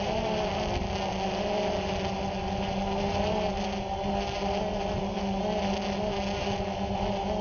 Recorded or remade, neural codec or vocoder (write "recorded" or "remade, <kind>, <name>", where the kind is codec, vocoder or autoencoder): recorded